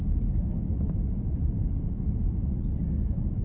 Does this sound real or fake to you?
real